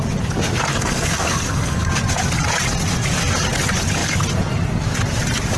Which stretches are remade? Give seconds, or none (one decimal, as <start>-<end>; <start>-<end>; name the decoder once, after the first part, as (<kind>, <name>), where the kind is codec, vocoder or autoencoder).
0.7-1.9 (codec, SNAC)